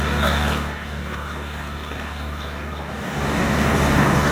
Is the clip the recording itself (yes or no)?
no